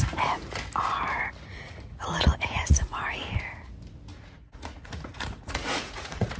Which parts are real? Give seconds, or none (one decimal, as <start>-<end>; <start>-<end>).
0.0-1.5; 3.1-4.1